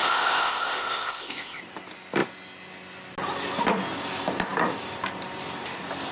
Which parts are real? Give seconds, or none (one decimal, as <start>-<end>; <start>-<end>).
1.6-6.1